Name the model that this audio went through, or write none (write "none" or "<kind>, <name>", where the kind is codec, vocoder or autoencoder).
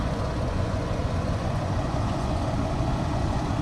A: vocoder, Vocos